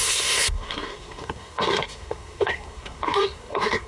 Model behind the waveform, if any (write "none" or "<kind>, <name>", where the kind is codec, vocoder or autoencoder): codec, SNAC